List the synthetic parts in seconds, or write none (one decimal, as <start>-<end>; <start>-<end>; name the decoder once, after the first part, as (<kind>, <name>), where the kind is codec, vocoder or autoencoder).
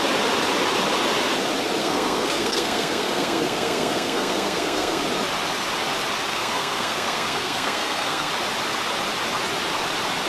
1.8-5.0 (codec, SNAC); 6.3-8.3